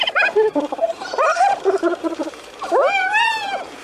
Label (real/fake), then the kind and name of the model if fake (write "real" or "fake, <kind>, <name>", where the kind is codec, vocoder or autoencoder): fake, vocoder, BigVGAN v2